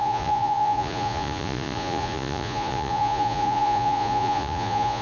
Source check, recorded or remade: remade